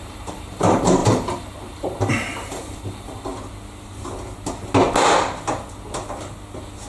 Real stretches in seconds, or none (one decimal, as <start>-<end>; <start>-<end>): 3.3-6.9